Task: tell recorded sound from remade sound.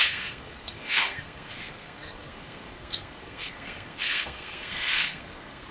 remade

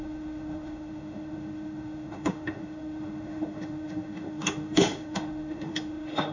remade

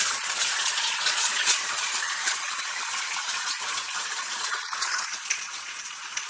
remade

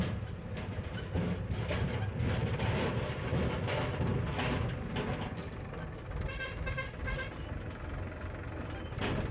recorded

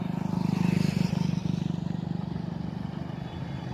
recorded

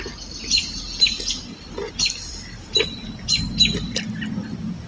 recorded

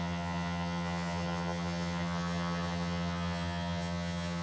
remade